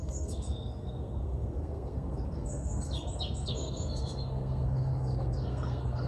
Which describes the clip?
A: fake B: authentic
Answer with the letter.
A